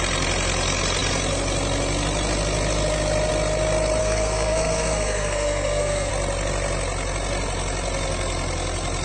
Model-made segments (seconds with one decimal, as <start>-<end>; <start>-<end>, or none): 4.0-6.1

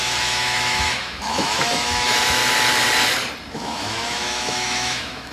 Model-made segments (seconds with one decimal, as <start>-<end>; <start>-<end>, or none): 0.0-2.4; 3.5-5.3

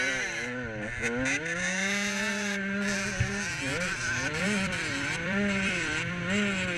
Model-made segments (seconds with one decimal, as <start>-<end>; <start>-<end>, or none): 3.7-6.2

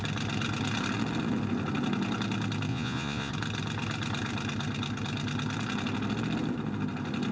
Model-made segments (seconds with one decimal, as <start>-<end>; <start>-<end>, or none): 2.7-3.3